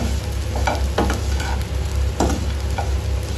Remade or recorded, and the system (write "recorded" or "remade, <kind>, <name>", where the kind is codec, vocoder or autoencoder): recorded